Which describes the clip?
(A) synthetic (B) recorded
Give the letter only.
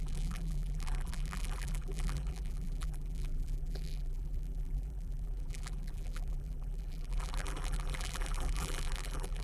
A